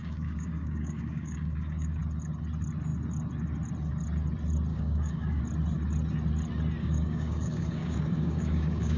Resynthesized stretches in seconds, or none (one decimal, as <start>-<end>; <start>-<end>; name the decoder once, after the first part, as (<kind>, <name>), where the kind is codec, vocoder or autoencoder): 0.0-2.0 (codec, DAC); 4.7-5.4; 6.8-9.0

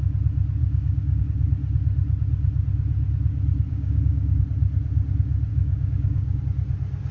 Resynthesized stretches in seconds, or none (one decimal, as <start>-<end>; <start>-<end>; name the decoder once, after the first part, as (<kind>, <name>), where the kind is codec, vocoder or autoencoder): 0.6-1.2 (codec, DAC); 3.7-4.4; 5.5-6.4

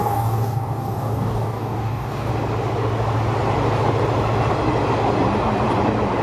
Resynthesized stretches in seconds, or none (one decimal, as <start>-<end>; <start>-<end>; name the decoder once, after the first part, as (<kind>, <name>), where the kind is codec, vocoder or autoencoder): 0.0-2.3 (codec, DAC)